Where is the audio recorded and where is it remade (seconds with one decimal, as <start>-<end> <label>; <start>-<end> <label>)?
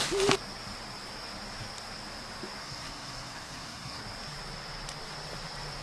0.0-2.6 recorded; 2.6-4.0 remade; 4.0-5.8 recorded